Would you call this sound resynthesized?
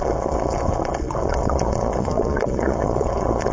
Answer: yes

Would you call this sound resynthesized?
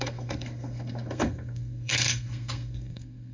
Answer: yes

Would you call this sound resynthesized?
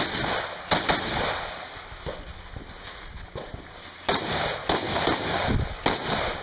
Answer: no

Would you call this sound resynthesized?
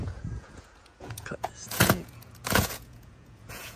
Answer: yes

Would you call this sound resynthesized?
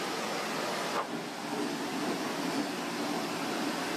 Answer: no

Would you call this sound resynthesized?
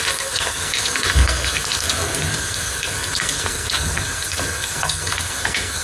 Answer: yes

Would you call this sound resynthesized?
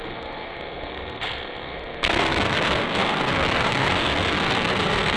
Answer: yes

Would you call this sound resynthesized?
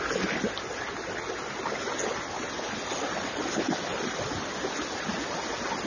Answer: no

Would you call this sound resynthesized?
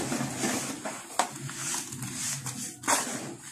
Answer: no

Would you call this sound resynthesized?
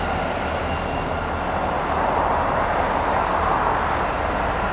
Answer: no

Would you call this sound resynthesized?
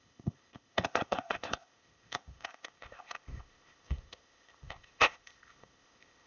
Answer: yes